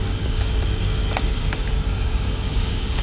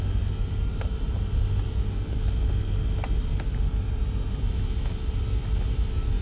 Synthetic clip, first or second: first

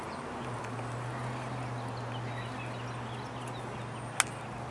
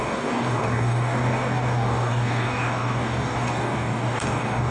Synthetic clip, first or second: second